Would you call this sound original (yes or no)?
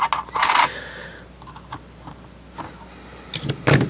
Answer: yes